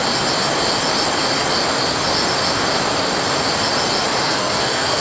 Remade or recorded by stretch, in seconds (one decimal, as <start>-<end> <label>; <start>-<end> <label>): 0.0-4.2 recorded; 4.2-5.0 remade